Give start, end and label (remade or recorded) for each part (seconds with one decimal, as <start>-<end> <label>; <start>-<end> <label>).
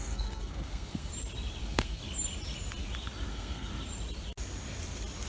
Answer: 0.0-1.1 remade; 1.1-1.6 recorded; 1.6-2.0 remade; 2.0-3.3 recorded; 3.3-3.7 remade; 3.7-5.3 recorded